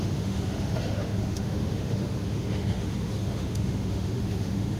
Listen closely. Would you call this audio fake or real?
fake